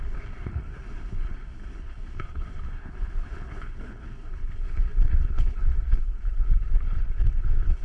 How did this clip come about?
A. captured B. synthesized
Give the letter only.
B